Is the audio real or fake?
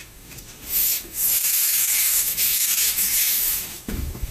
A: fake